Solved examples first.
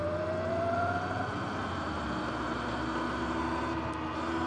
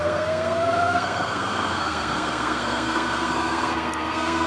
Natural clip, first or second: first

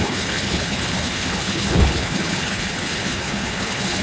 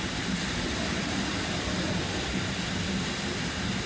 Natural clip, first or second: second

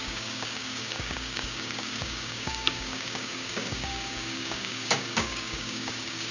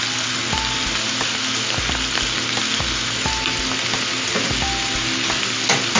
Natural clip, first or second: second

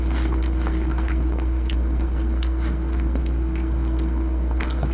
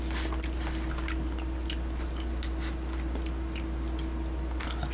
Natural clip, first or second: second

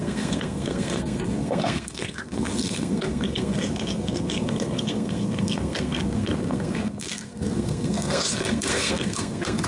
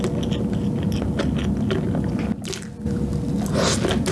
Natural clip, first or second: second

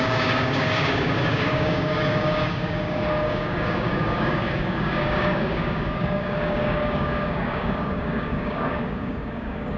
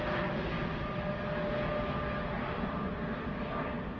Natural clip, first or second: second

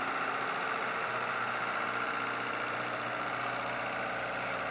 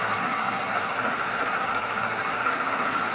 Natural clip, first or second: first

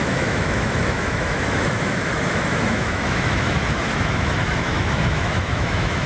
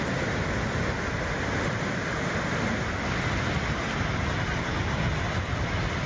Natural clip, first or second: second